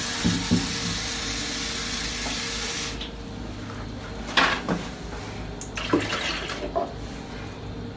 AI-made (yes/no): no